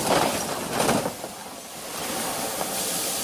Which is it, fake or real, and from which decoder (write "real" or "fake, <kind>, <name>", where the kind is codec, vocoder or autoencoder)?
fake, vocoder, BigVGAN v2